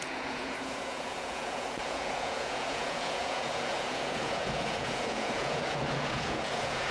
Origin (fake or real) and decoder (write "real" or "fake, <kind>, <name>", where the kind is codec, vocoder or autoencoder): fake, vocoder, Vocos